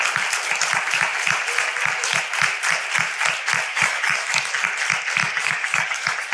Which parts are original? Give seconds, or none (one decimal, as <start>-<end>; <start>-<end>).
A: 0.0-3.7; 4.3-5.2